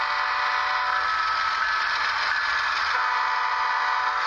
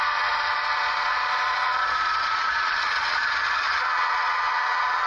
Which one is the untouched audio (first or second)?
first